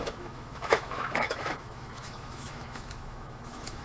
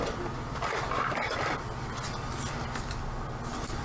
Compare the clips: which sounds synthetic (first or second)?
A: first